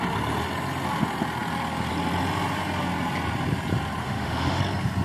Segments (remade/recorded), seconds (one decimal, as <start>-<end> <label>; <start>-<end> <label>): 0.0-4.0 recorded; 4.0-4.6 remade; 4.6-5.0 recorded

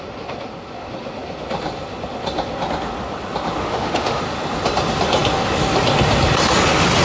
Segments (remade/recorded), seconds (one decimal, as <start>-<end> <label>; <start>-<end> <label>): 0.0-3.6 recorded; 3.6-4.2 remade; 4.2-7.0 recorded